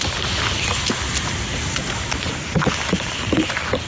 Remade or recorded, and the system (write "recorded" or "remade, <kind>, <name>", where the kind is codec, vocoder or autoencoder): recorded